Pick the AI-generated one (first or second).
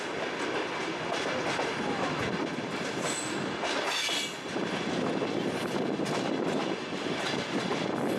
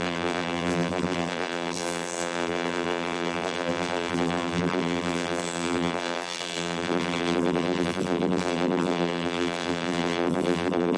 second